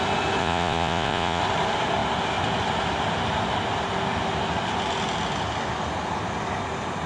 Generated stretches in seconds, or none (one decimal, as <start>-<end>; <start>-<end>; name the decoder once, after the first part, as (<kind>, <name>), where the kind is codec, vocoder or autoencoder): 0.4-1.4 (vocoder, Vocos)